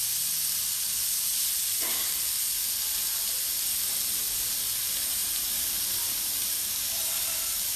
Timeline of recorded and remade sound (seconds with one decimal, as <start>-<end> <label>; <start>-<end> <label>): 0.0-1.3 remade; 1.3-4.8 recorded; 4.8-7.8 remade

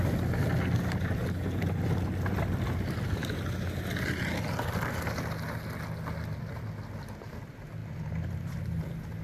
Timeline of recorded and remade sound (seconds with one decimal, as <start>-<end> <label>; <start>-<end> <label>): 0.0-9.2 recorded

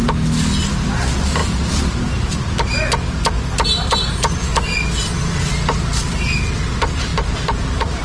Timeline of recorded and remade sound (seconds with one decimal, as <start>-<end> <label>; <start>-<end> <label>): 0.0-7.1 recorded; 7.1-8.0 remade

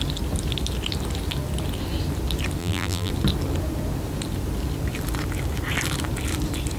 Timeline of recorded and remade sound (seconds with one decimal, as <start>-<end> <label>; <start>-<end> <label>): 0.0-2.6 recorded; 2.6-3.1 remade; 3.1-6.8 recorded

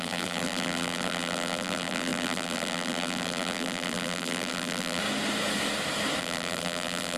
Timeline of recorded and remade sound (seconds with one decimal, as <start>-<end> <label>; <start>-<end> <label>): 0.0-5.0 remade; 5.0-6.2 recorded; 6.2-7.2 remade

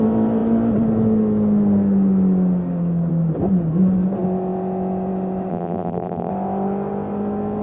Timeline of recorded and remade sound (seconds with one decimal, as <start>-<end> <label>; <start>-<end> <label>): 0.0-5.5 recorded; 5.5-6.3 remade; 6.3-7.6 recorded

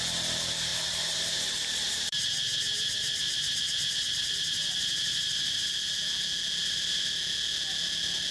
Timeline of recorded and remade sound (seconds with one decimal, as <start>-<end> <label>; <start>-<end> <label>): 0.0-0.7 recorded; 0.7-5.7 remade; 5.7-6.6 recorded; 6.6-7.1 remade; 7.1-8.3 recorded

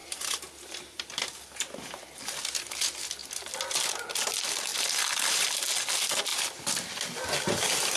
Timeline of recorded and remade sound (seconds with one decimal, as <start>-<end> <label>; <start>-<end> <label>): 0.0-1.2 remade; 1.2-4.7 recorded; 4.7-5.5 remade; 5.5-8.0 recorded